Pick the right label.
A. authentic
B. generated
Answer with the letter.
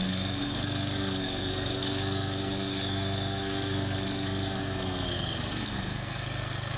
B